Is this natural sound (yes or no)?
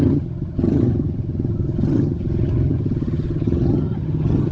no